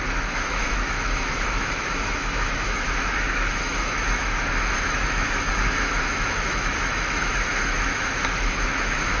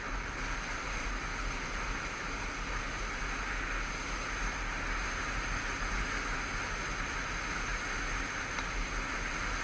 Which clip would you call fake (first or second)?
first